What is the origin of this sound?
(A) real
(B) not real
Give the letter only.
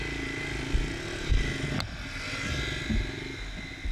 A